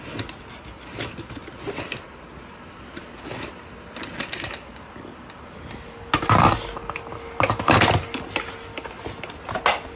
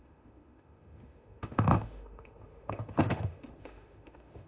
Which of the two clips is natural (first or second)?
first